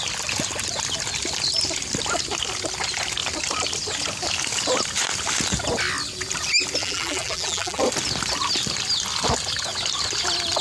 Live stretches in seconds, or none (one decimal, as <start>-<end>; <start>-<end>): 0.0-6.8; 7.8-10.6